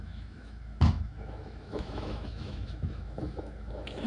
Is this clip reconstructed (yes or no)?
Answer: yes